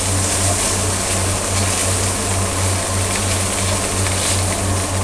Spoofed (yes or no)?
no